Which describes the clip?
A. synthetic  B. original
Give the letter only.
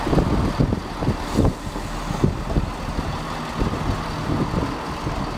B